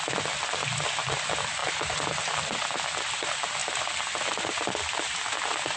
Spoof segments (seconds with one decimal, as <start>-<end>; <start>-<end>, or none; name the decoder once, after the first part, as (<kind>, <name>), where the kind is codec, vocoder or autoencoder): none

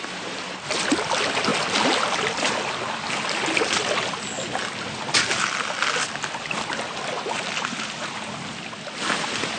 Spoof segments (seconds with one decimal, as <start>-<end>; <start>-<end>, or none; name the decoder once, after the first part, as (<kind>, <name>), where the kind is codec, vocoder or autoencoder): none

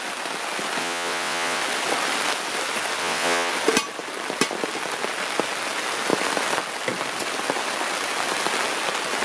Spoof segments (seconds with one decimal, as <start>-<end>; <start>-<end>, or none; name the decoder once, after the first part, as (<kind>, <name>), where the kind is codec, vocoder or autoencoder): 0.8-1.6 (vocoder, WaveNeXt); 3.0-3.5

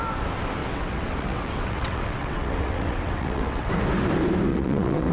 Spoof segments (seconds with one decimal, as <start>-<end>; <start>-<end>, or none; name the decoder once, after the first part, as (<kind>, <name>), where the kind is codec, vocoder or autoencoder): 0.6-3.7 (vocoder, WaveNeXt); 4.5-5.1

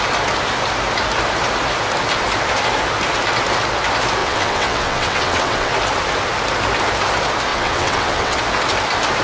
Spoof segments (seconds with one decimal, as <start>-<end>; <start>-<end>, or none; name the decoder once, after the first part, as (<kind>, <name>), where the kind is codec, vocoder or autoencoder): 4.2-5.7 (vocoder, WaveNeXt); 7.5-8.4

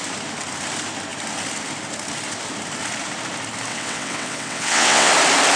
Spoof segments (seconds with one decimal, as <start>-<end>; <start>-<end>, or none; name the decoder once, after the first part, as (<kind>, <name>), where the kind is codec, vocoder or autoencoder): 3.7-5.1 (vocoder, WaveNeXt)

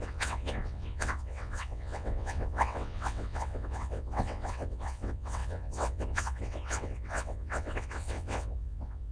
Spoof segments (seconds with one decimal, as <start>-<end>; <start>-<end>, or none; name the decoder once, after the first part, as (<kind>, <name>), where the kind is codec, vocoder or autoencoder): 0.0-9.1 (vocoder, WaveNeXt)